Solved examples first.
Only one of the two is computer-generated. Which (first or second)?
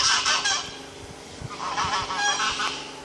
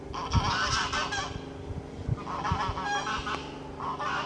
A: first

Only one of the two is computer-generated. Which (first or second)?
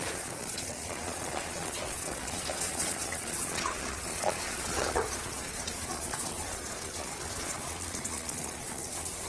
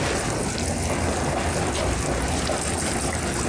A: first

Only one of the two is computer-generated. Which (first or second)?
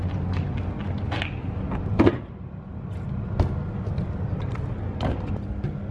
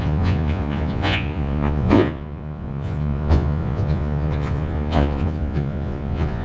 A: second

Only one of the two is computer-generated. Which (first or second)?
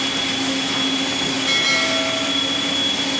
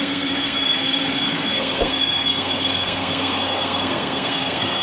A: second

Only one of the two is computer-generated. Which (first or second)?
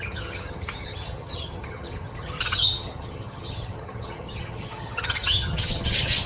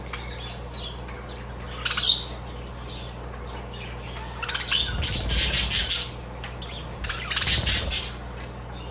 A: first